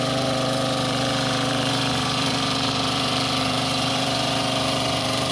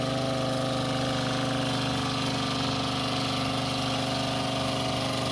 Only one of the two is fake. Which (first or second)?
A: first